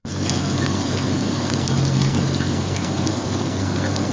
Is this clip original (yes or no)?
no